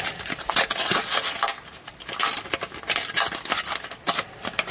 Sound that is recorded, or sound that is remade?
recorded